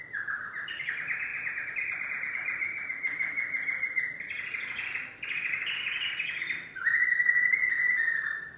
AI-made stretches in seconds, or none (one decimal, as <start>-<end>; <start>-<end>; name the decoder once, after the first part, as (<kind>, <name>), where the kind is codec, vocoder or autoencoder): none